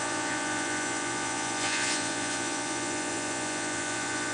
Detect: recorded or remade remade